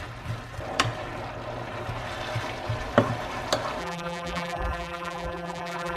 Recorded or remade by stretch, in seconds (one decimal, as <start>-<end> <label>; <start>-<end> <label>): 0.0-3.8 recorded; 3.8-6.0 remade